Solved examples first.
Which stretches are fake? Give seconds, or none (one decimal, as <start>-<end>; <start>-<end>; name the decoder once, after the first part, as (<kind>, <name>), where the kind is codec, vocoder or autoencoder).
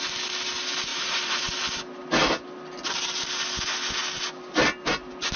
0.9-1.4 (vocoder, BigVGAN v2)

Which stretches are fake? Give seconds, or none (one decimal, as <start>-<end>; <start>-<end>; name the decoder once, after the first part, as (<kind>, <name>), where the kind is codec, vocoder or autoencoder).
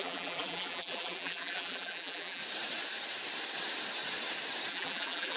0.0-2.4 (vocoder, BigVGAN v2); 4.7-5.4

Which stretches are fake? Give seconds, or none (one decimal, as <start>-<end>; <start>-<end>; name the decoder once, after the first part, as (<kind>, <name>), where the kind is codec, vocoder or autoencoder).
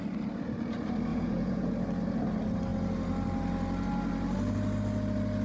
1.1-1.7 (vocoder, Vocos)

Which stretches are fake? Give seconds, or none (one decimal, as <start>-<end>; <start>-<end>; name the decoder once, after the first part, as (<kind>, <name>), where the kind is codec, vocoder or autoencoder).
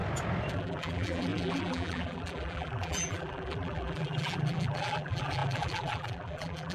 0.5-6.7 (vocoder, BigVGAN v2)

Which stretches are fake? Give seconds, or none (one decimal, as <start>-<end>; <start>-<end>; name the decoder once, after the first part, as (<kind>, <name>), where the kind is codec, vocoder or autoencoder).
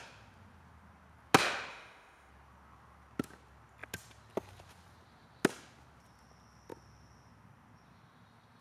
1.7-2.3 (autoencoder, DAC-VAE)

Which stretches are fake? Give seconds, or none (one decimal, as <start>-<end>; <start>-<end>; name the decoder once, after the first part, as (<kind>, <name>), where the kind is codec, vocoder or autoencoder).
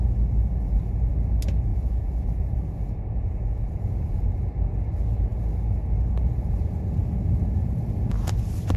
1.7-4.5 (vocoder, Vocos)